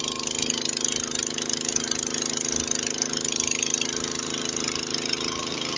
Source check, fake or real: real